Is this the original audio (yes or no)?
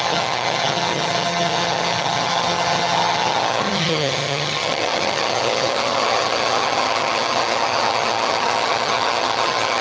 no